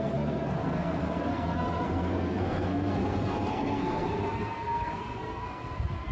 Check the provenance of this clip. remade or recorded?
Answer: remade